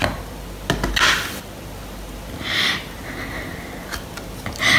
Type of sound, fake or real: real